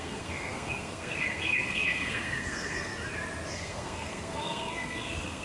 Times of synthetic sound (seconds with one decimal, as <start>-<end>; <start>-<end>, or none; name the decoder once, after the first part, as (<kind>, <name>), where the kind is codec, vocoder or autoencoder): 0.0-2.9 (codec, SNAC); 3.5-5.4